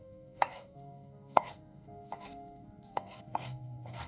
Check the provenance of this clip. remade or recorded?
remade